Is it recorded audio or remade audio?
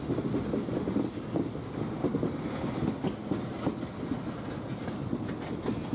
recorded